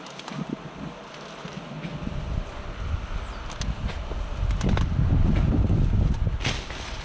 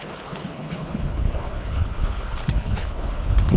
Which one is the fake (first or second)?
second